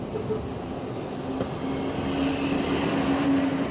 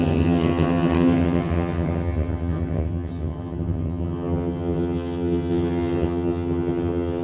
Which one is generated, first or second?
second